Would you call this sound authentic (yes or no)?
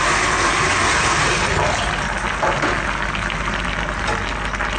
yes